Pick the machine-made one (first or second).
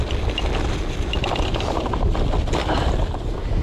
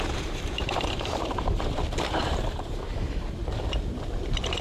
second